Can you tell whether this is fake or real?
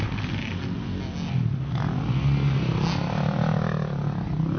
real